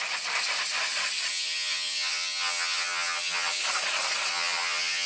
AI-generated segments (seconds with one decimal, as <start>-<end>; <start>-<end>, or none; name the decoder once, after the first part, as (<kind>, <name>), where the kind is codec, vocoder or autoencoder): 1.3-3.6 (vocoder, HiFi-GAN); 4.3-5.1